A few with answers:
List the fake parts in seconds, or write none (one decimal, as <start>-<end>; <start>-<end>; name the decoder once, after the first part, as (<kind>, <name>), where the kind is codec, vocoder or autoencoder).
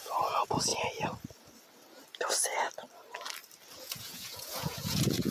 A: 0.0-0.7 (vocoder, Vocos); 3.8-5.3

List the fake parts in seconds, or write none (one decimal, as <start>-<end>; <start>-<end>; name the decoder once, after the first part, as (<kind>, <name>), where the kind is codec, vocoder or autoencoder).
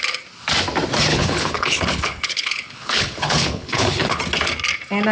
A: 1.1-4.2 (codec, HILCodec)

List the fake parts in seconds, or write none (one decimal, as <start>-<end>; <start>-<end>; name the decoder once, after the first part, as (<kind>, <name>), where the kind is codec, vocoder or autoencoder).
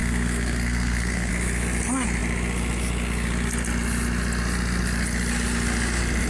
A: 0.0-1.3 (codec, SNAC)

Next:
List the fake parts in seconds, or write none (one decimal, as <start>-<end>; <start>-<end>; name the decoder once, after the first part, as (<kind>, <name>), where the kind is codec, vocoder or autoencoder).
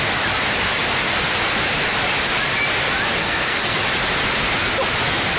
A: 3.2-3.8 (codec, SNAC)